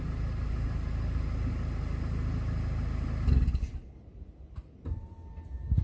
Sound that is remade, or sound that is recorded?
recorded